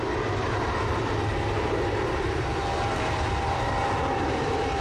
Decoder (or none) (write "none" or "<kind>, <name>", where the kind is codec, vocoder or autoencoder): vocoder, BigVGAN v2